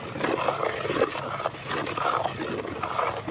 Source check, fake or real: real